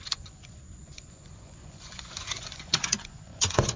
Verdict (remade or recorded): remade